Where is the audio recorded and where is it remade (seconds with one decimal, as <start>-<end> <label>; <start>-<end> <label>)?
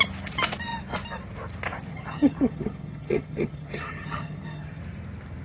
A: 0.0-1.9 recorded; 1.9-4.8 remade; 4.8-5.4 recorded